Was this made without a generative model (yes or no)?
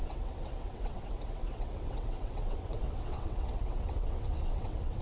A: no